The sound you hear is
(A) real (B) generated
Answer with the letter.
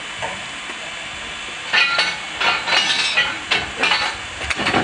A